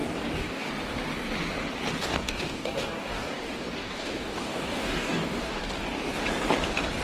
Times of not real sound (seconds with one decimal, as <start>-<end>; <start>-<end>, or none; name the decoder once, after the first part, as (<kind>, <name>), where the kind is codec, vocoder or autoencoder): 0.0-0.7 (codec, DAC); 2.1-5.6